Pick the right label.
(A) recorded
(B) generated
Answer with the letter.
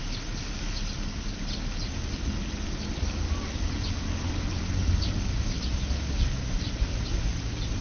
A